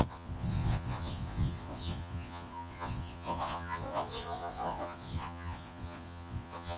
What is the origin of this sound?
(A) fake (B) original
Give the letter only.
A